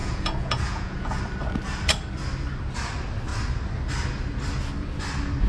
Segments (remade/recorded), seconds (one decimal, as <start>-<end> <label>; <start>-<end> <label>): 0.0-1.2 remade; 1.2-5.5 recorded